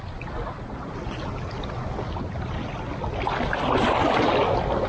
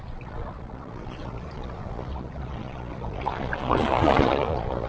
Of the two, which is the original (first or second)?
first